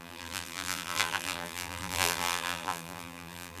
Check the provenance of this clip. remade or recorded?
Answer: remade